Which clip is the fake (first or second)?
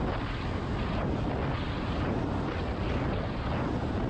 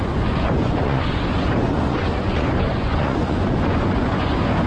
second